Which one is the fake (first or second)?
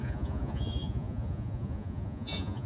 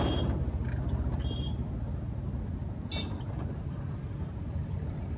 first